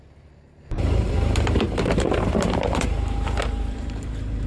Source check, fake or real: fake